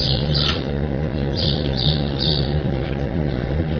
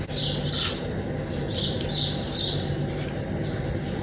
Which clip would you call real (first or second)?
second